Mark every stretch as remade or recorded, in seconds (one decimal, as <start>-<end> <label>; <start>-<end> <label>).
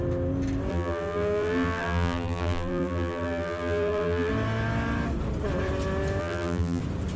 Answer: 0.0-0.7 recorded; 0.7-4.3 remade; 4.3-6.2 recorded; 6.2-6.8 remade; 6.8-7.2 recorded